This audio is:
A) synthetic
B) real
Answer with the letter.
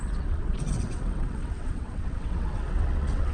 A